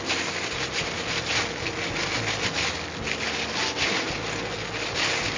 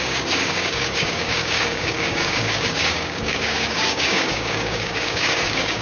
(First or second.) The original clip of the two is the first